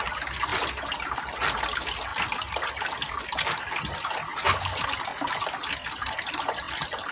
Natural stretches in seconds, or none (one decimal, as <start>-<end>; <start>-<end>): 0.0-7.1